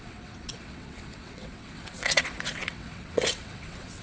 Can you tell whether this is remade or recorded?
remade